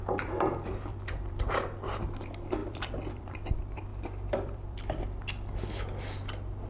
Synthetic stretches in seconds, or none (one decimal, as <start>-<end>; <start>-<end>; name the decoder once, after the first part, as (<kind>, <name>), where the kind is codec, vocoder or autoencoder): 0.9-1.5 (vocoder, BigVGAN v2); 2.6-3.3; 3.9-5.0